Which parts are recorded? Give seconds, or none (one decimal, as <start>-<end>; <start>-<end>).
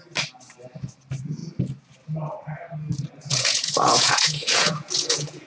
0.0-3.3